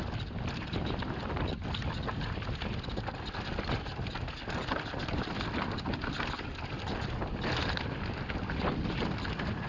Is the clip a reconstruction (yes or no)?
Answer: no